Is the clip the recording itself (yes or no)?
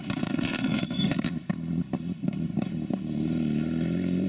no